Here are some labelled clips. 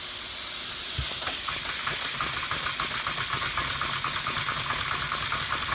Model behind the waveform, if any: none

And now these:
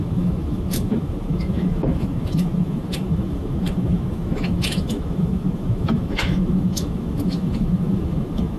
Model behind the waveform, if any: autoencoder, DAC-VAE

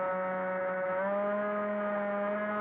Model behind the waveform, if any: none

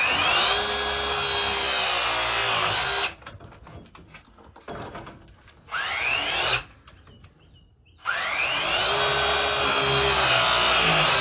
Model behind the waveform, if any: none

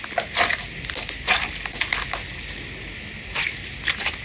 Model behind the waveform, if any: none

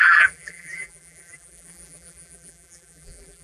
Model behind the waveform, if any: vocoder, BigVGAN v2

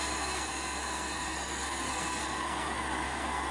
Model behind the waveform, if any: codec, SNAC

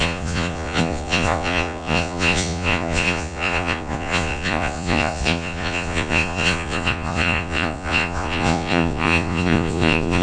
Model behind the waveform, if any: vocoder, Vocos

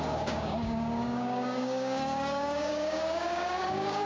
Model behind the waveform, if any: codec, DAC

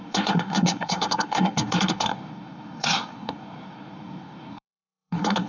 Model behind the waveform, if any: codec, SNAC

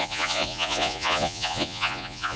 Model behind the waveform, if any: vocoder, Vocos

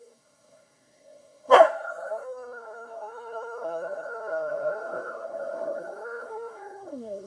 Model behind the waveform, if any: codec, SNAC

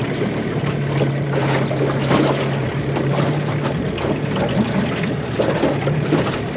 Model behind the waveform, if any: none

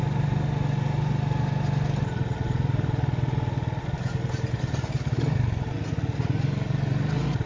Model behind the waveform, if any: none